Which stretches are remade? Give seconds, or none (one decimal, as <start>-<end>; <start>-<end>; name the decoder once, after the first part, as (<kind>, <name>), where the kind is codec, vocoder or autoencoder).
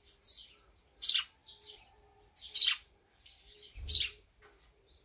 1.4-4.4 (vocoder, BigVGAN v2)